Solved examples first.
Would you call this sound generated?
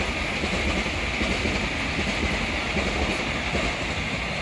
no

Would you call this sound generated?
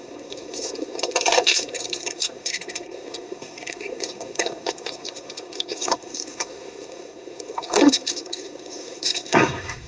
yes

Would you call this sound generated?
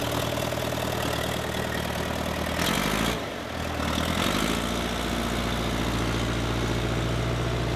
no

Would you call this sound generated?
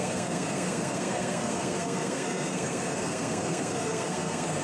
yes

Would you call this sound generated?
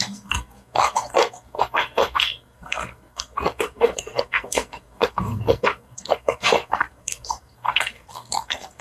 yes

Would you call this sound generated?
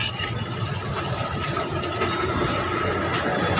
no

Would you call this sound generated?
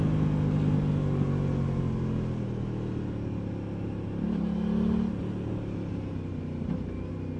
no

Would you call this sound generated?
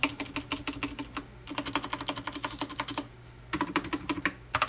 no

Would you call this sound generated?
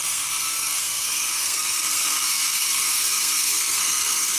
yes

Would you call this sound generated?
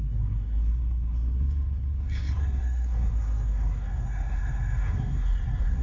yes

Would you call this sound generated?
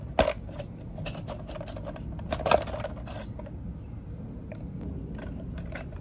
no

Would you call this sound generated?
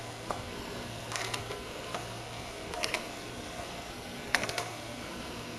yes